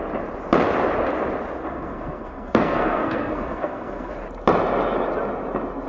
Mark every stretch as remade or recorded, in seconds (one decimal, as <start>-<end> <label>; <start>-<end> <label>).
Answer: 0.0-1.6 recorded; 1.6-4.1 remade; 4.1-5.9 recorded